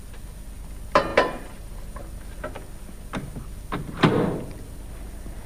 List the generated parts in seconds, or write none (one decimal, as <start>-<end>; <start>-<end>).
1.1-2.0